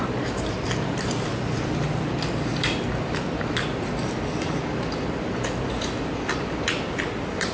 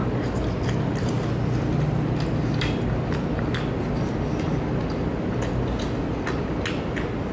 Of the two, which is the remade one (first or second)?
first